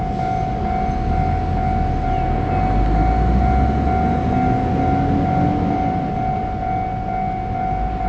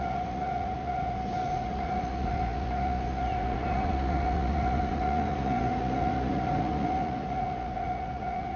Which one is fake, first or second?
second